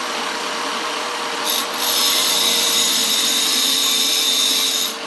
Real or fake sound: fake